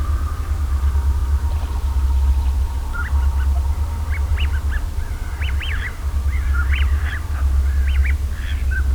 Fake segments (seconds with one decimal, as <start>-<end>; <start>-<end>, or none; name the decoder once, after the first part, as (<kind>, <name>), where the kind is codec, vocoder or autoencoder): none